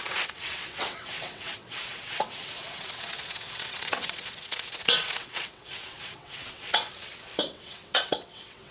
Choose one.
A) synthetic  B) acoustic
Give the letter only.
A